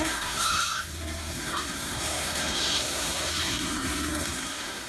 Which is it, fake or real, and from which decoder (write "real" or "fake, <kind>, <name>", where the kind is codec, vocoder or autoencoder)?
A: fake, codec, SNAC